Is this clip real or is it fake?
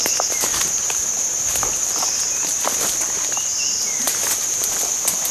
real